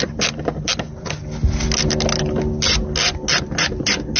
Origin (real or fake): real